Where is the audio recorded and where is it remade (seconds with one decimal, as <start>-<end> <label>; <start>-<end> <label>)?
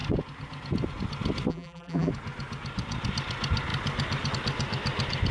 0.0-1.5 recorded; 1.5-2.1 remade; 2.1-5.3 recorded